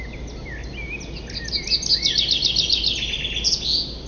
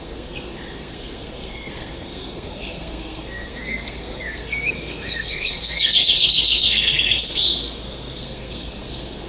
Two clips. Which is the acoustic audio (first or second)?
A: first